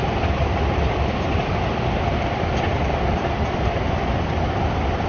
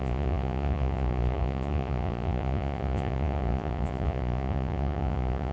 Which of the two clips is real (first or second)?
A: first